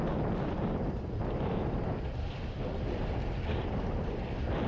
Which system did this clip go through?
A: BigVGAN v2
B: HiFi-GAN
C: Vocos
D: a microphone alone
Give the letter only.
A